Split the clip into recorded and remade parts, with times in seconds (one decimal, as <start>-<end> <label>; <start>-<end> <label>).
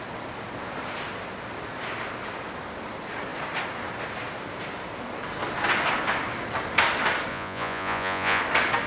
0.0-7.3 recorded; 7.3-8.4 remade; 8.4-8.9 recorded